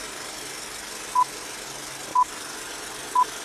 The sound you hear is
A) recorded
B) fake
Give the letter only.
A